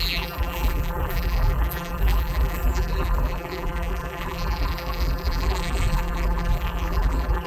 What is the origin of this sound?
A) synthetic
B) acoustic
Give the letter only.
A